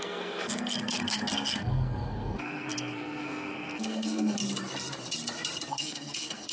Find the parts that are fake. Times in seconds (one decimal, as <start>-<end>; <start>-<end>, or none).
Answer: 0.0-4.4; 5.7-6.5